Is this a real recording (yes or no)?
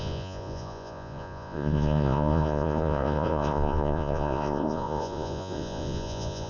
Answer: no